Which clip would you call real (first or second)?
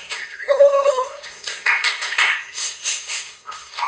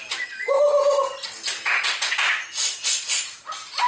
second